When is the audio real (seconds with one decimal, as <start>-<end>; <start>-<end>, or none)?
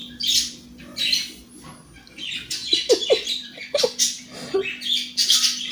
0.0-2.6; 3.8-5.7